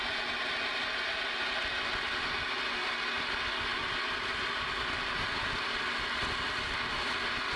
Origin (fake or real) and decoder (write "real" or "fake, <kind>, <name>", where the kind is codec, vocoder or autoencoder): real